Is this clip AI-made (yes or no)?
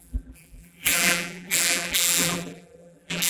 yes